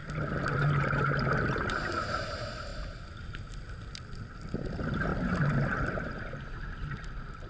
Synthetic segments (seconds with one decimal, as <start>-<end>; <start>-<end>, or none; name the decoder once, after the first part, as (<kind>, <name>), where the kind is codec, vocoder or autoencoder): none